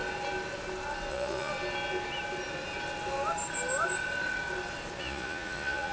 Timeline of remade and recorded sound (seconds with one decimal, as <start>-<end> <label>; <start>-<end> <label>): 0.0-1.1 recorded; 1.1-1.5 remade; 1.5-5.0 recorded; 5.0-5.9 remade